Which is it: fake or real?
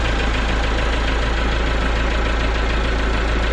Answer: real